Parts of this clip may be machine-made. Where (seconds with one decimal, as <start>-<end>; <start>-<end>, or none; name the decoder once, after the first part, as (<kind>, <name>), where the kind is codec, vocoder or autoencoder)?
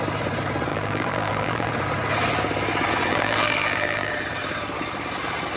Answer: 0.7-1.7 (vocoder, BigVGAN v2); 3.1-4.1